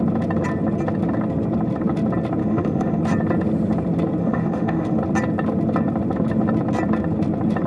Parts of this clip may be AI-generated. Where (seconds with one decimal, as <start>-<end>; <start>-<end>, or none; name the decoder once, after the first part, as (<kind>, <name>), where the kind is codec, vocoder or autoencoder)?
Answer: 2.4-3.0 (autoencoder, DAC-VAE); 4.2-5.0